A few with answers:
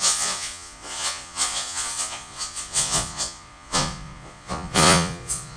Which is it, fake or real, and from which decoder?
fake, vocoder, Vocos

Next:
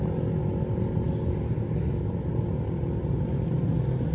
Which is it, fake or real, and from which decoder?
real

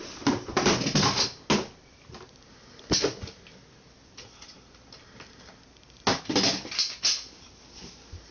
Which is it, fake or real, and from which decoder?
real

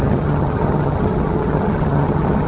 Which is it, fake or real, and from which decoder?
fake, vocoder, HiFi-GAN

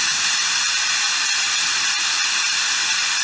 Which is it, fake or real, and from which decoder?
real